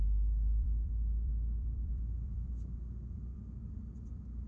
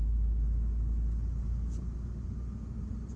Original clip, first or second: second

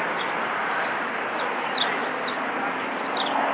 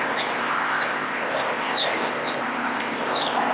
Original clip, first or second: first